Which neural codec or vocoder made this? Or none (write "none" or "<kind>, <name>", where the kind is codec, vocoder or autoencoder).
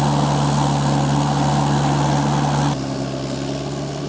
none